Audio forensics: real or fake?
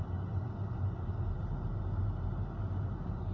real